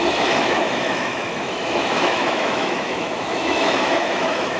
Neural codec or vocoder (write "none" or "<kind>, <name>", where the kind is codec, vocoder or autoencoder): autoencoder, DAC-VAE